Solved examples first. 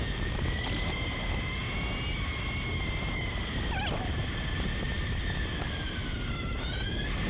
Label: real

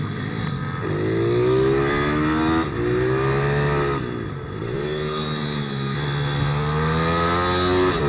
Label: real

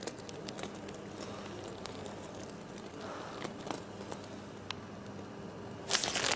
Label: real